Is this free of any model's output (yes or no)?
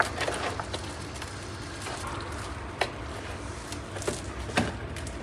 yes